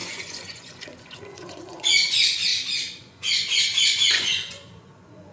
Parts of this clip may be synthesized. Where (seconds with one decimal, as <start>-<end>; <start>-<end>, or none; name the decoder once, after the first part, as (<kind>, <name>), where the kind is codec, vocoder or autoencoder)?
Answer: 0.0-2.5 (vocoder, Vocos); 3.0-5.3